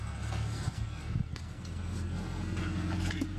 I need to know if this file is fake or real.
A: fake